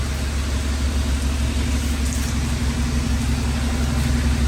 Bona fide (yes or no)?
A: yes